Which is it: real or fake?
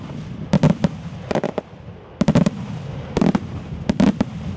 real